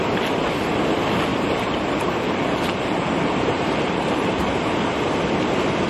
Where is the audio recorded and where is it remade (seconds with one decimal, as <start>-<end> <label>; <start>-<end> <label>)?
0.0-1.3 recorded; 1.3-4.8 remade; 4.8-5.9 recorded